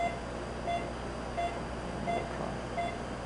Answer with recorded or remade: recorded